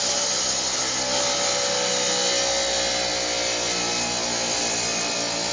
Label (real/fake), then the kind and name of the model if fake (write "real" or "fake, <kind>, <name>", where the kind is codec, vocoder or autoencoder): real